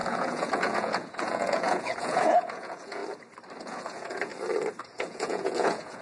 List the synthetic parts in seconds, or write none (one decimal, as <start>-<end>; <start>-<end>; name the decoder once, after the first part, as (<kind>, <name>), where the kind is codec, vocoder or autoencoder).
0.0-3.0 (vocoder, Vocos); 3.6-4.3; 4.8-6.0